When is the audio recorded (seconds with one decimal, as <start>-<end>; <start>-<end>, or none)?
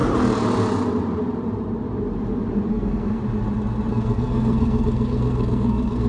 0.0-2.7; 3.2-3.9